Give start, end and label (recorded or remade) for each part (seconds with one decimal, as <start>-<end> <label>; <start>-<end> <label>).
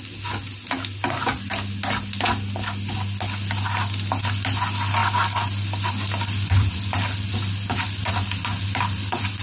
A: 0.0-5.0 recorded; 5.0-5.9 remade; 5.9-9.4 recorded